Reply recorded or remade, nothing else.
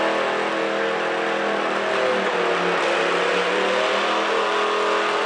recorded